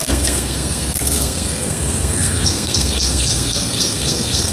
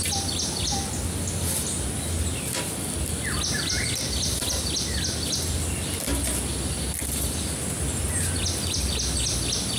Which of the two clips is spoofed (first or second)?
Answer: first